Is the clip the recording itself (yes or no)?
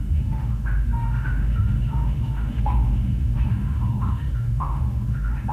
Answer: no